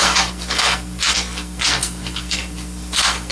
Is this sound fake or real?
fake